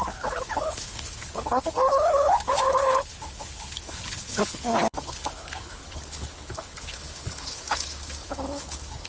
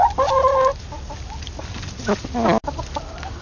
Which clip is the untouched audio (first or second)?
second